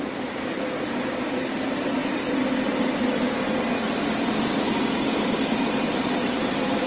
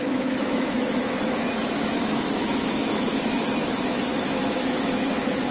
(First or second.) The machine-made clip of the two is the second